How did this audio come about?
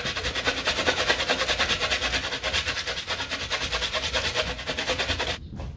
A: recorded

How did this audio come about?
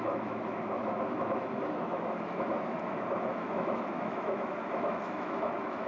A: remade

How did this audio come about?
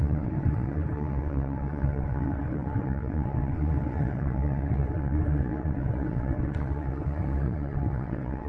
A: remade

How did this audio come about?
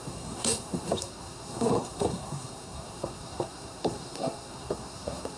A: remade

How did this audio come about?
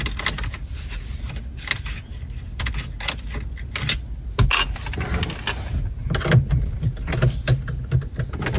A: recorded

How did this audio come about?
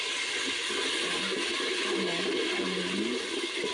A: recorded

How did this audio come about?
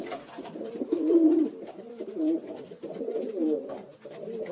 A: remade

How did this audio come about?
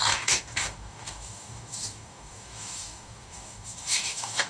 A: remade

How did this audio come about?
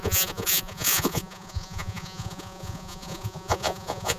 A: remade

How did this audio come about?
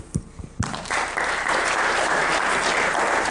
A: remade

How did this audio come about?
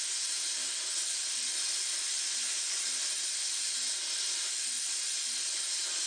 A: recorded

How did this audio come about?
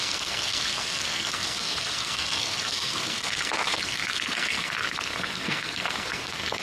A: remade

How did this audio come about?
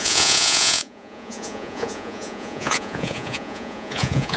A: remade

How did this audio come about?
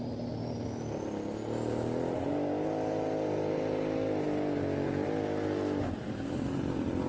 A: recorded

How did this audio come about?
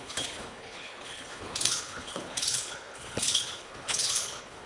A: remade